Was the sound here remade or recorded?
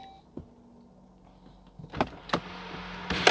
recorded